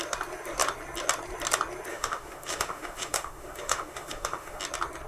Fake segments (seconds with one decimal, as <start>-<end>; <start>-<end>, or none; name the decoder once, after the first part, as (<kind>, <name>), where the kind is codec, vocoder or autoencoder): 1.9-4.6 (autoencoder, DAC-VAE)